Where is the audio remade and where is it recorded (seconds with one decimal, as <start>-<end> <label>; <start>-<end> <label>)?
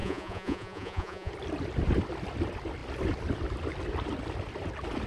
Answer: 0.0-1.3 remade; 1.3-5.1 recorded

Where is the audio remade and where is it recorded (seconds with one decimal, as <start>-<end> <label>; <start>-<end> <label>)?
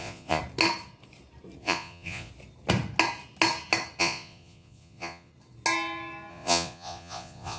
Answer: 0.0-0.4 remade; 0.4-1.6 recorded; 1.6-2.3 remade; 2.3-4.0 recorded; 4.0-5.3 remade; 5.3-6.3 recorded; 6.3-7.6 remade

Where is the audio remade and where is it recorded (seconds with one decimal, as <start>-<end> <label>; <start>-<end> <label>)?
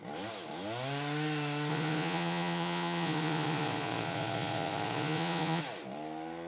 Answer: 0.0-1.7 recorded; 1.7-5.6 remade; 5.6-6.5 recorded